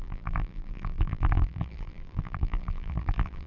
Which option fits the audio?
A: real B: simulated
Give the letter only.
B